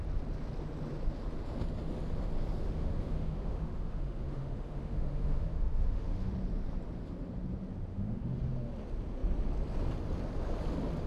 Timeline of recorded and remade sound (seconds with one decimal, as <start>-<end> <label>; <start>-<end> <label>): 0.0-2.6 recorded; 2.6-6.3 remade; 6.3-7.9 recorded; 7.9-8.4 remade; 8.4-11.1 recorded